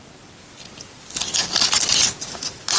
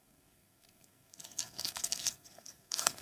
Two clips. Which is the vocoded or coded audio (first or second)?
second